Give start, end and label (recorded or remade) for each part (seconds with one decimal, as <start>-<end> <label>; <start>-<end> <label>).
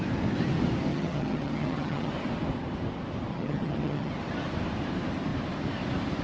0.0-0.9 recorded; 0.9-2.1 remade; 2.1-3.3 recorded; 3.3-4.1 remade; 4.1-6.2 recorded